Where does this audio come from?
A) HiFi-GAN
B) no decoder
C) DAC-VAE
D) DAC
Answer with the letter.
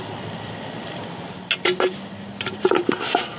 B